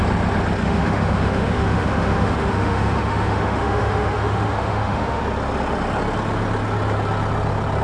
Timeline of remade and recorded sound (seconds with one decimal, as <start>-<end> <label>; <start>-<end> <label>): 0.0-0.6 recorded; 0.6-5.2 remade; 5.2-7.8 recorded